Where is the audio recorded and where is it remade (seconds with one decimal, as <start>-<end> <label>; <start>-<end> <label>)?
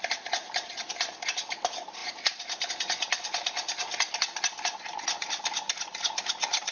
0.0-6.7 recorded